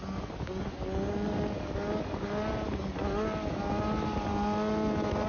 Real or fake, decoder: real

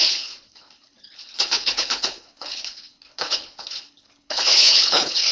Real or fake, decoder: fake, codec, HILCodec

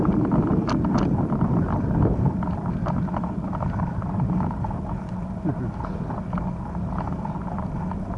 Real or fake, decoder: real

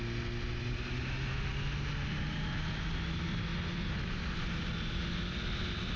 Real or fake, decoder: real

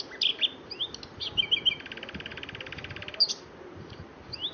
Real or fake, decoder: real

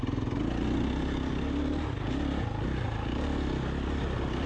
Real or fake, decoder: real